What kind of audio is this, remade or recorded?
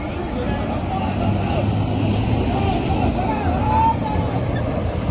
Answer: recorded